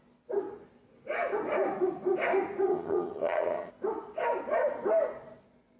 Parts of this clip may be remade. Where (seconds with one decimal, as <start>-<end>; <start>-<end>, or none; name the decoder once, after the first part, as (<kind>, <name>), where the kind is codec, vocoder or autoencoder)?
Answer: 2.7-3.7 (vocoder, HiFi-GAN)